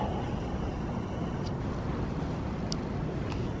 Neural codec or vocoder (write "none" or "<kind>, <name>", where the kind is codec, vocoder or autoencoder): none